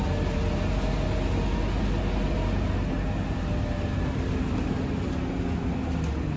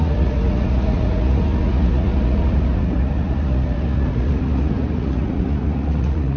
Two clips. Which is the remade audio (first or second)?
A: second